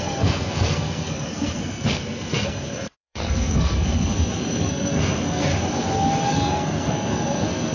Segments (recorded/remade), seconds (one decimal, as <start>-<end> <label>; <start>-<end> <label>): 0.0-5.5 remade; 5.5-6.3 recorded; 6.3-7.7 remade